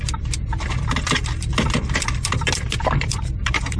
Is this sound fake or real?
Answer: fake